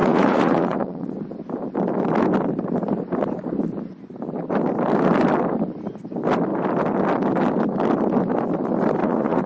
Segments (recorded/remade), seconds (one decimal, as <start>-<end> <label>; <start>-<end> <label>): 0.0-1.1 remade; 1.1-9.0 recorded; 9.0-9.5 remade